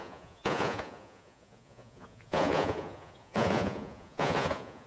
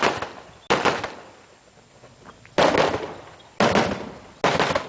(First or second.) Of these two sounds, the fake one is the first